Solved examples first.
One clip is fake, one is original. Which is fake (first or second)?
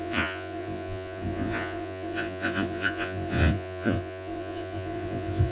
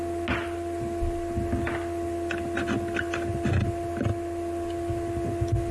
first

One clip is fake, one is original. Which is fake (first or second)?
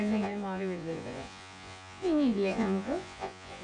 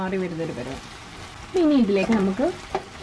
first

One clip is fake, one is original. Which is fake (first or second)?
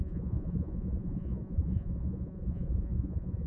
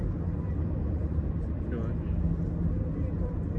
first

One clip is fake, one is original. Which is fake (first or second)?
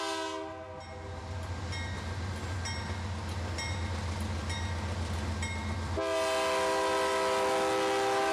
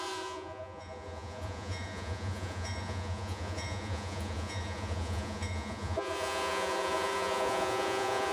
second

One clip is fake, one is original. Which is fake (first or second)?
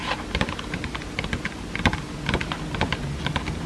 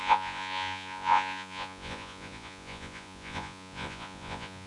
second